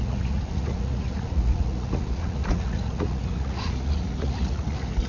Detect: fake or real fake